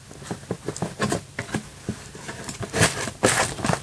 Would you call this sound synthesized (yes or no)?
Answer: no